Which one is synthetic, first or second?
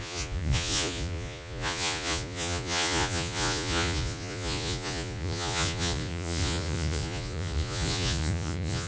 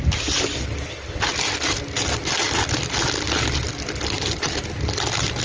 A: first